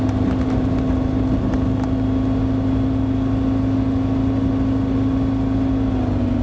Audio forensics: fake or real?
real